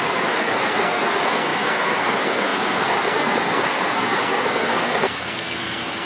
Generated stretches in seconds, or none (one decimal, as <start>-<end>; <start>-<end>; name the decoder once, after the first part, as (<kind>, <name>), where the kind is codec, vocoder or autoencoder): 0.0-6.1 (codec, SNAC)